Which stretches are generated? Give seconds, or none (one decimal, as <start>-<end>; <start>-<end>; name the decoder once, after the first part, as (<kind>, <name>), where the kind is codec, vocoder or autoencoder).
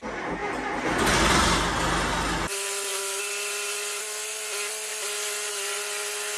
none